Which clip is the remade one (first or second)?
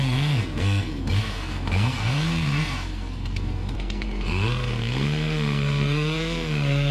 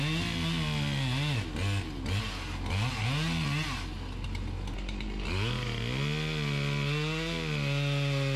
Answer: first